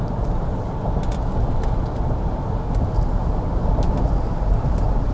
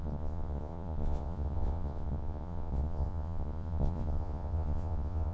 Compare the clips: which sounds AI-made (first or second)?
second